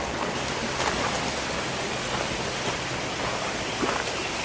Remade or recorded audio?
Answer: recorded